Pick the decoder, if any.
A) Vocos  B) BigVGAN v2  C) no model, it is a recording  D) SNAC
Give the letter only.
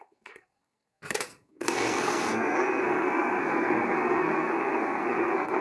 D